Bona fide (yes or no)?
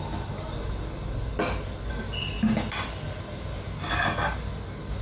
yes